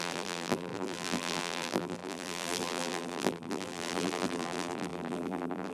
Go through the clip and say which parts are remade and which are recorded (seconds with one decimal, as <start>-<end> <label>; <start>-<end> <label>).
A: 0.0-5.7 remade